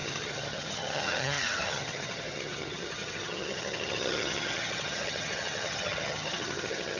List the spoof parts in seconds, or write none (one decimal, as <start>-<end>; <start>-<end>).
0.0-7.0